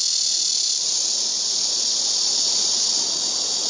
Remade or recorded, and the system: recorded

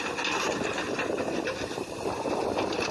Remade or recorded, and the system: remade, vocoder, BigVGAN v2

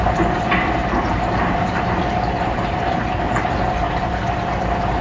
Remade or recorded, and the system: recorded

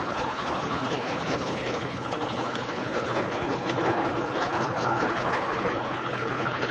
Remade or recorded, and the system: remade, codec, HILCodec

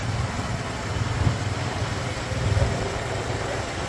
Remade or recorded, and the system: recorded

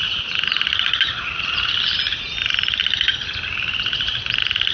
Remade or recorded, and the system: recorded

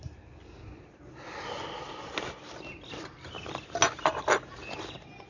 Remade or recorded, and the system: recorded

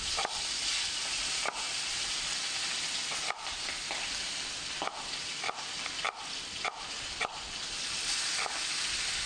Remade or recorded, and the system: recorded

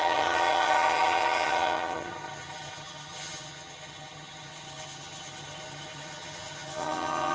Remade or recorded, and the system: remade, vocoder, HiFi-GAN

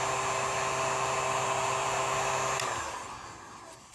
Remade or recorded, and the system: recorded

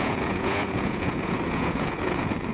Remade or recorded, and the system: remade, vocoder, Vocos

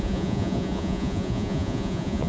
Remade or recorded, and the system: remade, vocoder, Vocos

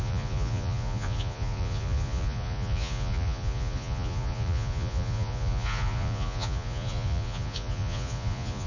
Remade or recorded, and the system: remade, vocoder, Vocos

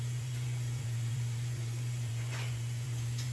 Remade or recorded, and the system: remade, vocoder, Vocos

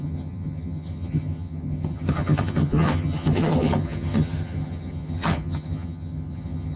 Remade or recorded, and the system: remade, vocoder, HiFi-GAN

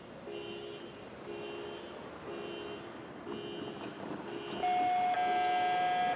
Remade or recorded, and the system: recorded